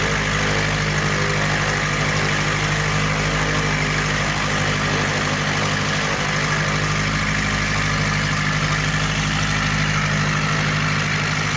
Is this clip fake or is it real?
real